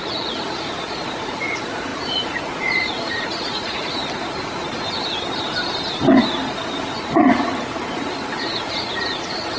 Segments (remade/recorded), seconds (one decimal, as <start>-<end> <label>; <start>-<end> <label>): 0.0-4.0 remade; 4.0-7.0 recorded; 7.0-9.6 remade